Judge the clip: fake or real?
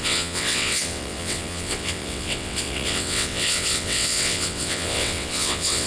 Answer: fake